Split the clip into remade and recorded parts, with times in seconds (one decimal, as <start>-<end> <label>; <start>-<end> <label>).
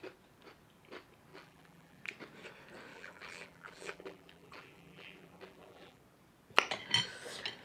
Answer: 0.0-1.3 recorded; 1.3-2.0 remade; 2.0-2.9 recorded; 2.9-6.0 remade; 6.0-7.6 recorded